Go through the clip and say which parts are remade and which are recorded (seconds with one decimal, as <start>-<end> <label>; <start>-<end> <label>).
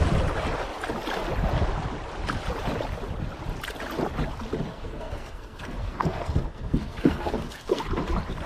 0.0-4.7 recorded; 4.7-7.8 remade; 7.8-8.5 recorded